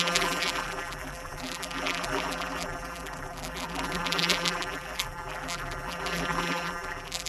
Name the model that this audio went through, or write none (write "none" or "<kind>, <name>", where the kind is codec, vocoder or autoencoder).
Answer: vocoder, BigVGAN v2